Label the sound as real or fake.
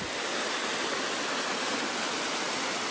real